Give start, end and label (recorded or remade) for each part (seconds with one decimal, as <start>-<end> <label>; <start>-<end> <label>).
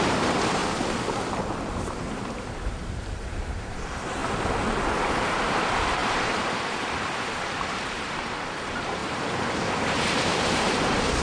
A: 0.0-0.6 remade; 0.6-1.3 recorded; 1.3-4.2 remade; 4.2-4.9 recorded; 4.9-11.2 remade